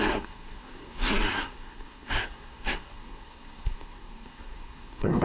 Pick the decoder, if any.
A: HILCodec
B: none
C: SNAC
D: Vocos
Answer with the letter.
C